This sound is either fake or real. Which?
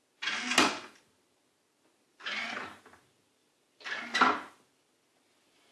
real